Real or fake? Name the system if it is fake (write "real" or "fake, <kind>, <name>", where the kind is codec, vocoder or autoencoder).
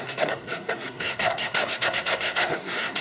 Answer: fake, codec, SNAC